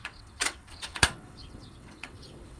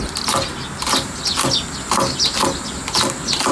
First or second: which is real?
second